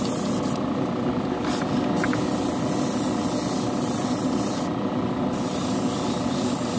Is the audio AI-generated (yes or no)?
no